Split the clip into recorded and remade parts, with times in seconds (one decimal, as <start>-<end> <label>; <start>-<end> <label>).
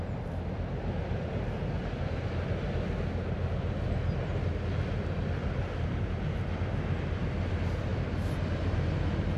0.0-9.4 recorded